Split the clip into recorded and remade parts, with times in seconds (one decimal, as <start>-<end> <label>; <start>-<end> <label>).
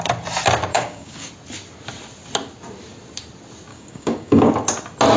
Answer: 0.0-0.7 recorded; 0.7-1.3 remade; 1.3-3.7 recorded; 3.7-4.5 remade; 4.5-5.2 recorded